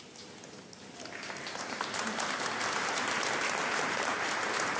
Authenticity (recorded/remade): recorded